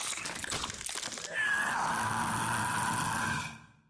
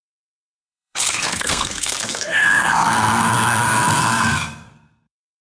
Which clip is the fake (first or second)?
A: second